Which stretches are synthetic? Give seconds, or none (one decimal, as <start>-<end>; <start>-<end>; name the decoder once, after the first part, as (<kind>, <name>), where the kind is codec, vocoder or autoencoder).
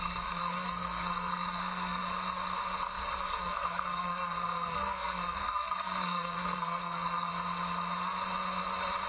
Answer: 0.0-2.0 (codec, SNAC); 3.2-7.3